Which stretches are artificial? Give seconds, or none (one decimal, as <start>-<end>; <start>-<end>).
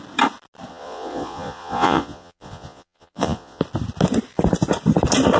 0.7-3.6